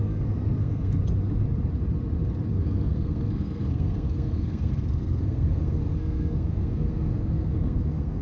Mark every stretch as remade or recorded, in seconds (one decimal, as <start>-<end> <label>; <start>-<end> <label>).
0.0-1.0 remade; 1.0-2.5 recorded; 2.5-8.2 remade